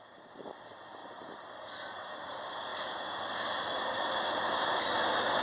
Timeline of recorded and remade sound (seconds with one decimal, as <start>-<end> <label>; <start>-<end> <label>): 0.0-5.4 recorded